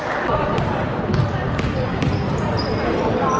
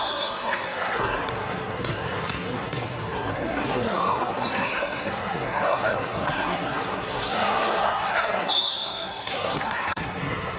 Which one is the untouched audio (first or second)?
first